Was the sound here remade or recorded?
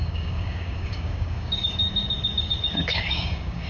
remade